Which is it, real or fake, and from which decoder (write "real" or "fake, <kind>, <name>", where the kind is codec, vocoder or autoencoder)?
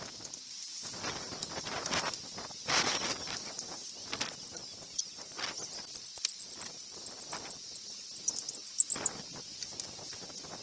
real